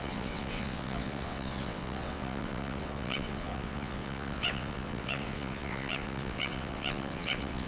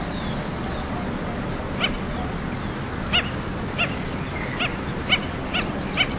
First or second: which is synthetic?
first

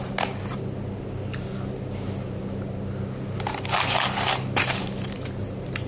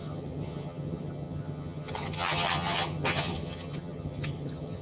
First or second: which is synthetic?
second